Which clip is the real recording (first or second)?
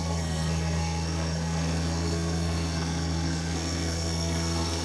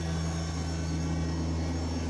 second